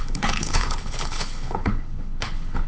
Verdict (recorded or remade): remade